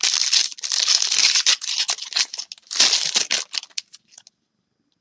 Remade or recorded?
recorded